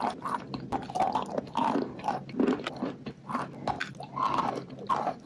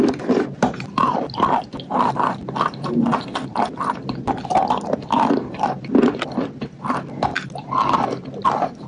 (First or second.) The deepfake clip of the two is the second